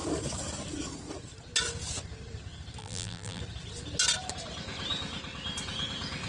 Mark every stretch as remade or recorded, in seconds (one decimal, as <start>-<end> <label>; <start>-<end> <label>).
0.0-2.8 recorded; 2.8-3.4 remade; 3.4-6.3 recorded